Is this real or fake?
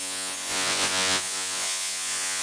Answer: fake